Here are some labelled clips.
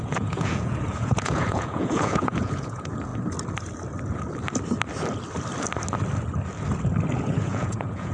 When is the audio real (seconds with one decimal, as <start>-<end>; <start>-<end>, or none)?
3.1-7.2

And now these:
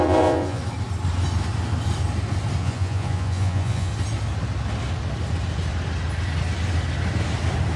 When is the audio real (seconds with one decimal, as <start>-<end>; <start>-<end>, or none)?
0.6-2.6; 3.9-7.8

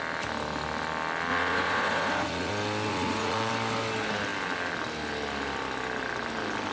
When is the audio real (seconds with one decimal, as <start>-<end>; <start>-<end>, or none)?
0.0-1.3; 2.5-2.9; 3.5-6.7

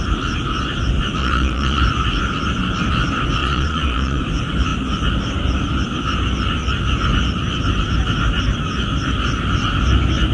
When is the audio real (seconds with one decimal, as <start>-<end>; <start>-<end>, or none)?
0.0-1.2; 1.8-3.4; 4.2-10.3

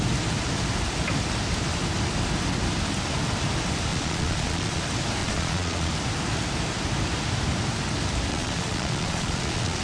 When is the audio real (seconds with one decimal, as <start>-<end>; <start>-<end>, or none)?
0.0-3.9; 4.8-5.2; 5.9-8.3

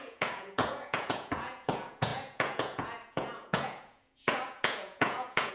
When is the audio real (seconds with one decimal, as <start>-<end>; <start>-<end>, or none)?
none